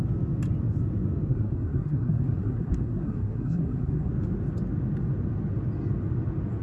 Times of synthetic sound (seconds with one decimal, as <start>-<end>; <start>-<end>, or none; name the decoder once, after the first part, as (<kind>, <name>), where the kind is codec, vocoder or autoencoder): 1.3-4.1 (codec, SNAC)